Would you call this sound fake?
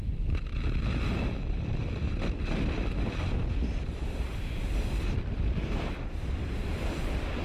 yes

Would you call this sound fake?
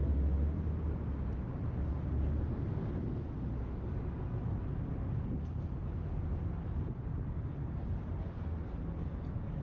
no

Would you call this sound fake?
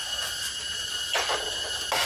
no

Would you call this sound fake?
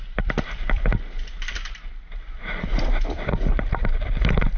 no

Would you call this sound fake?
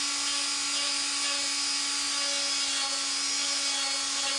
no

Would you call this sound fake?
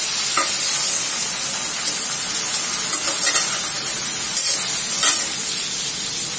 no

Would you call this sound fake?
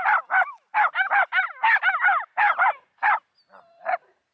no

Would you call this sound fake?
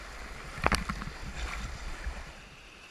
yes